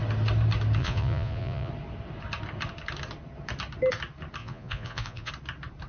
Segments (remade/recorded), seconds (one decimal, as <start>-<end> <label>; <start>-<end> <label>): 0.0-0.8 recorded; 0.8-1.7 remade; 1.7-4.4 recorded; 4.4-5.3 remade; 5.3-5.9 recorded